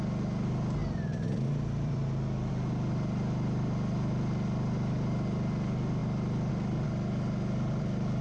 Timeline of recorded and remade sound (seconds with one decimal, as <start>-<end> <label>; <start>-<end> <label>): 0.0-0.8 recorded; 0.8-2.5 remade; 2.5-6.0 recorded; 6.0-6.5 remade; 6.5-8.2 recorded